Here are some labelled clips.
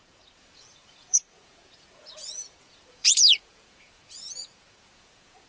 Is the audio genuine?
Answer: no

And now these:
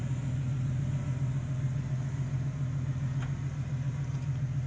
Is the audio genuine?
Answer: yes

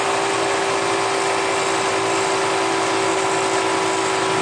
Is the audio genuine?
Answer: yes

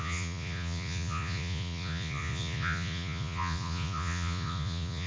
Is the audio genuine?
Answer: no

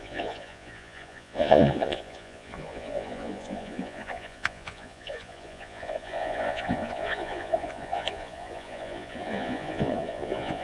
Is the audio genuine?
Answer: no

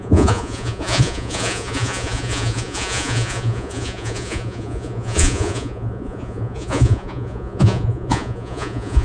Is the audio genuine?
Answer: no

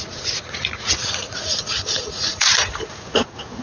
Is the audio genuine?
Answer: no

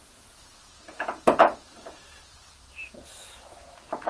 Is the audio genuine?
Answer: no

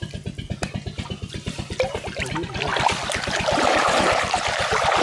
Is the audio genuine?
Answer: yes